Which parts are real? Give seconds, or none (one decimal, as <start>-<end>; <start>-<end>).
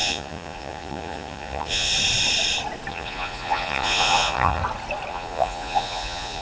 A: 1.9-2.9; 4.6-5.1